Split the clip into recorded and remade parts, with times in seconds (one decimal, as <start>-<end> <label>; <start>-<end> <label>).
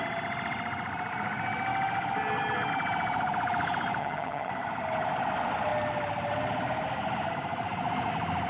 0.0-4.0 recorded; 4.0-4.5 remade; 4.5-8.5 recorded